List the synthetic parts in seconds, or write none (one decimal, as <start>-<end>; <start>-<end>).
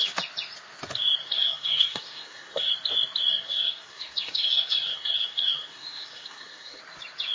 1.2-2.7; 3.3-6.8